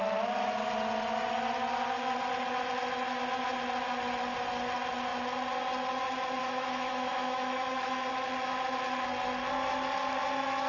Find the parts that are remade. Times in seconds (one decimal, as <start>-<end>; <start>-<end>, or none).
6.4-8.1